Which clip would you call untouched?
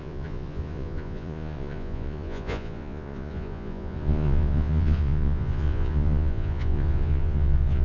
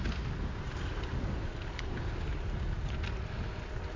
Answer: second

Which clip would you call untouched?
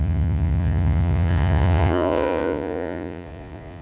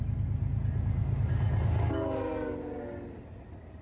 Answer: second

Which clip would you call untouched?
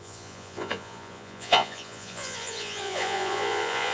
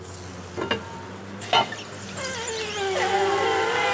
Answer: second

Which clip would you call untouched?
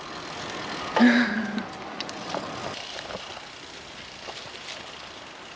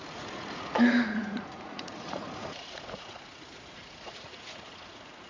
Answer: first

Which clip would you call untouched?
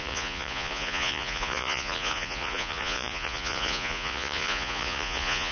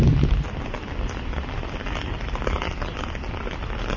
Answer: second